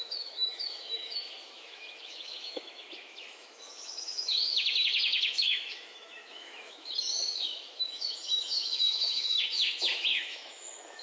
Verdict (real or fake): fake